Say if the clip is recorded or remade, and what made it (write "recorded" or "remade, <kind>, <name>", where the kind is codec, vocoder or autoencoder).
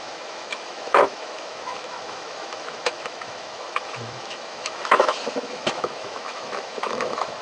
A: remade, autoencoder, DAC-VAE